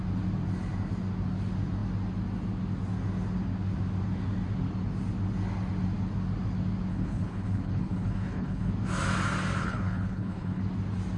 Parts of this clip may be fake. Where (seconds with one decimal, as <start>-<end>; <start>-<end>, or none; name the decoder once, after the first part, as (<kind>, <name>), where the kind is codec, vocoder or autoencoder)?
6.9-8.7 (codec, HILCodec); 9.6-10.6